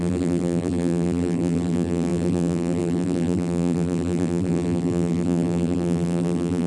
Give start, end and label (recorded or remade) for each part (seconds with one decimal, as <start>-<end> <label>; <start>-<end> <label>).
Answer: 0.0-6.7 remade